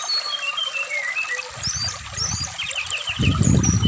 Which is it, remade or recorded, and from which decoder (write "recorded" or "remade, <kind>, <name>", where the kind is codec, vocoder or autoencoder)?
recorded